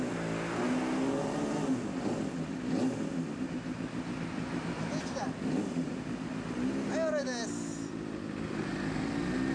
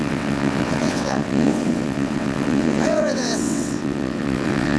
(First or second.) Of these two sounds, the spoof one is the second